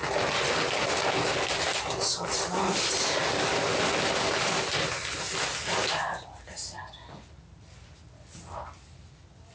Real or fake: real